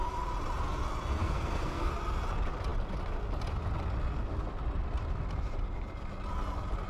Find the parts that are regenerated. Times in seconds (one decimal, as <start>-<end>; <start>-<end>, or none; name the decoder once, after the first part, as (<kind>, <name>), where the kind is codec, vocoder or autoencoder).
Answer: 1.2-1.9 (codec, SNAC)